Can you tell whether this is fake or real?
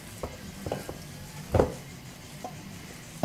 real